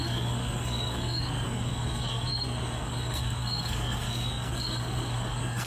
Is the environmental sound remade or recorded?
remade